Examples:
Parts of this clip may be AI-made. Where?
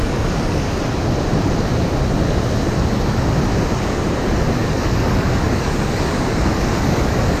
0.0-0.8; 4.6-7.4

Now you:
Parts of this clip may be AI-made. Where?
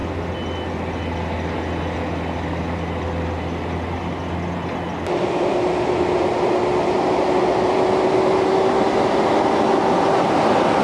none